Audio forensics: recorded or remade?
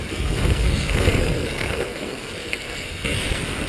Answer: remade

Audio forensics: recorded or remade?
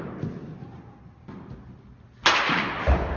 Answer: recorded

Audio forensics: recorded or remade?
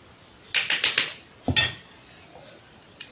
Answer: recorded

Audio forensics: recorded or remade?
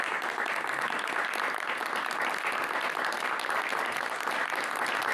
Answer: recorded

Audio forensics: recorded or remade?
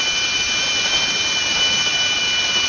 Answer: recorded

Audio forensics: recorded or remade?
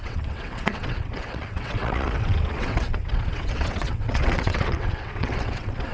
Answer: remade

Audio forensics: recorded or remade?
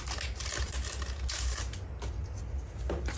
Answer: recorded